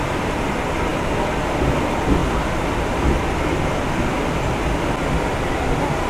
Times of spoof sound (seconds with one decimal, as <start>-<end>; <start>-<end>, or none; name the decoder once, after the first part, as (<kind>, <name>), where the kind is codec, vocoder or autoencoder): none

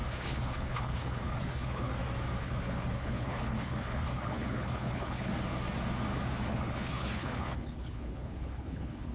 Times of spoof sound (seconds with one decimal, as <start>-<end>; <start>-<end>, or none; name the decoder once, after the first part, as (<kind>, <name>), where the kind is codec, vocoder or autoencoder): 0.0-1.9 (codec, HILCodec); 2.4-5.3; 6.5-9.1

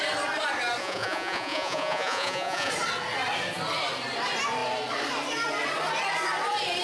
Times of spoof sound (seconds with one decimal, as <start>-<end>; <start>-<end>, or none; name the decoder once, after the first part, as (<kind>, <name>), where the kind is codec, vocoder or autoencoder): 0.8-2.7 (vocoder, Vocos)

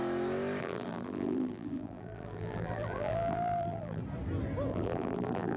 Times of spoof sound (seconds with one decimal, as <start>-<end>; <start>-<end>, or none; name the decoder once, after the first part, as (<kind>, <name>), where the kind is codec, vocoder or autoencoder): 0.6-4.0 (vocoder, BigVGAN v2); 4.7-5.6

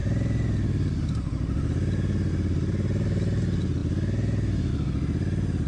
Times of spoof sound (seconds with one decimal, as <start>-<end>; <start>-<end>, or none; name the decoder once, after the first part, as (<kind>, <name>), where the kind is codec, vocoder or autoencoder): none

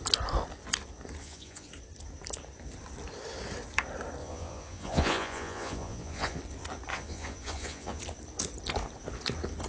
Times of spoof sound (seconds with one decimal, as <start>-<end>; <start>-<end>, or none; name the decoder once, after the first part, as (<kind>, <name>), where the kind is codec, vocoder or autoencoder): 1.2-1.7 (vocoder, Vocos); 4.2-6.4; 6.9-8.0

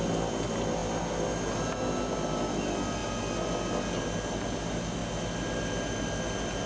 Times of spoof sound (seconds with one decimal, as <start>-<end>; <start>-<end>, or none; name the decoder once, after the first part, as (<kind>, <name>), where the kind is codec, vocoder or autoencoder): none